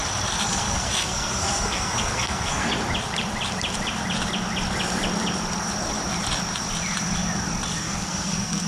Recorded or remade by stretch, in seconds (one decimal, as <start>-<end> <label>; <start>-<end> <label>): 0.0-0.5 recorded; 0.5-2.7 remade; 2.7-7.8 recorded; 7.8-8.7 remade